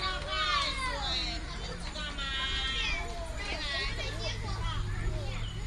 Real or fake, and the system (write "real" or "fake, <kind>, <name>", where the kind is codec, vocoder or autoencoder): real